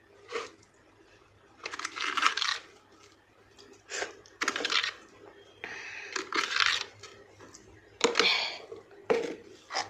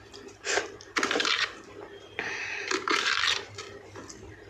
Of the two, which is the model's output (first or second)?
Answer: second